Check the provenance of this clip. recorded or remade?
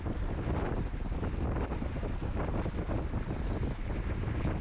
recorded